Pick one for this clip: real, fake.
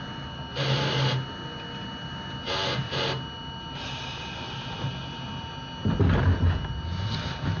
real